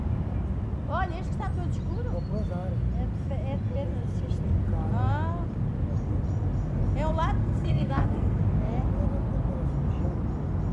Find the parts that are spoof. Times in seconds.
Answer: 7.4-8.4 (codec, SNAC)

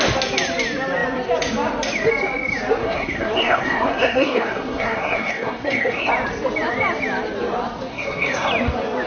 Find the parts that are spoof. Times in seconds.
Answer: 2.8-6.1 (codec, SNAC); 7.9-8.5

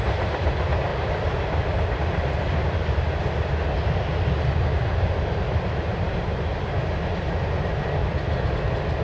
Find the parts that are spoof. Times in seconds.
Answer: none